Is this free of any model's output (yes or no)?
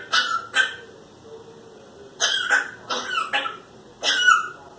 yes